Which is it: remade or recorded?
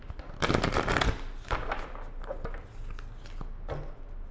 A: recorded